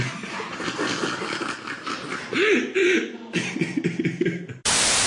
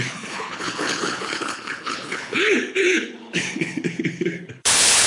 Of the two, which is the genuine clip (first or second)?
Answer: first